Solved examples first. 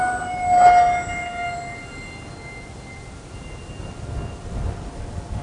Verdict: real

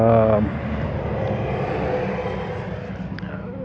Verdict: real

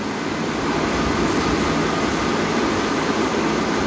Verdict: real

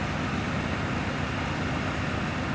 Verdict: real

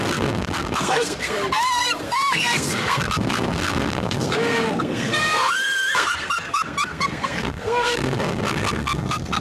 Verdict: fake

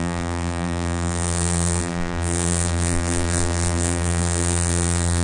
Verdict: fake